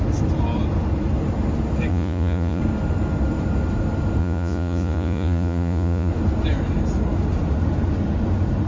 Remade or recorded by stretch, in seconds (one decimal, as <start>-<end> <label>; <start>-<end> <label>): 0.0-1.9 recorded; 1.9-2.6 remade; 2.6-4.2 recorded; 4.2-6.1 remade; 6.1-8.7 recorded